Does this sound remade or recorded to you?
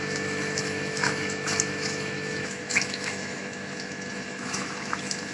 remade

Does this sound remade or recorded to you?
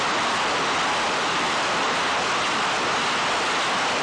recorded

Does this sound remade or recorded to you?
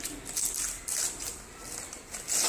remade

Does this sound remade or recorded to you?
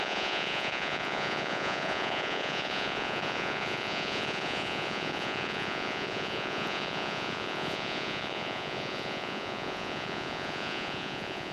remade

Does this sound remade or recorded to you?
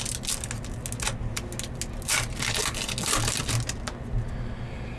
recorded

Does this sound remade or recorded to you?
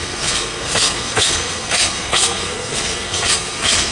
remade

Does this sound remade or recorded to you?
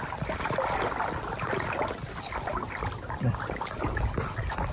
recorded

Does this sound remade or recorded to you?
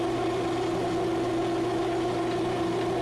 recorded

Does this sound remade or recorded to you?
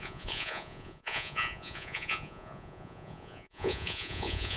remade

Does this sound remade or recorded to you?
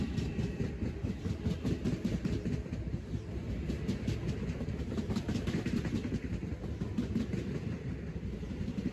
recorded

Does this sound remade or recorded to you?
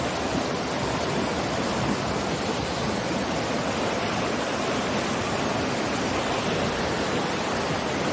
recorded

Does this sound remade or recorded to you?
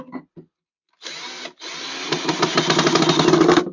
recorded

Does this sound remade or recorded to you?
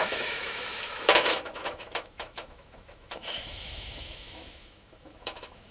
remade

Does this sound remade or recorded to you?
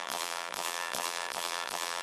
remade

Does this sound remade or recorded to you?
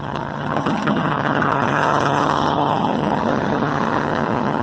remade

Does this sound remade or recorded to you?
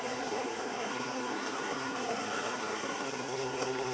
remade